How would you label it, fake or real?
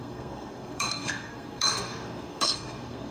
fake